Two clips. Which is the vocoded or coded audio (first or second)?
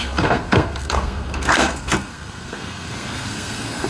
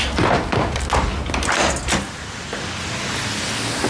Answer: first